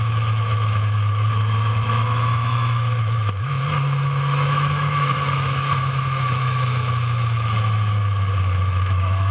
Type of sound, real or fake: fake